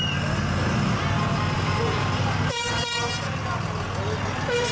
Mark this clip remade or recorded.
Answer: recorded